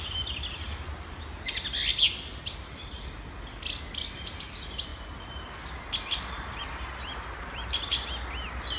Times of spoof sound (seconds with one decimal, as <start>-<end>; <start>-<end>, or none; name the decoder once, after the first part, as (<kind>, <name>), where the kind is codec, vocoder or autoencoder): none